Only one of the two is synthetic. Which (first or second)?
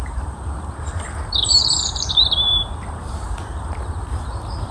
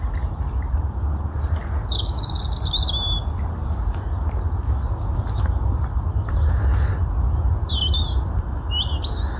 first